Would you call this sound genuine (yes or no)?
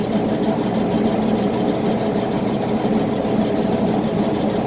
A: yes